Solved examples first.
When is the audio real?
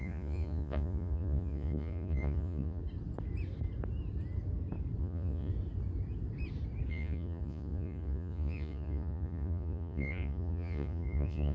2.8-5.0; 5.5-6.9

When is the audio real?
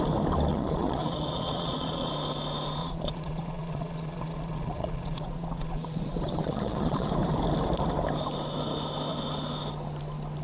0.0-0.5; 2.1-2.8; 7.1-10.4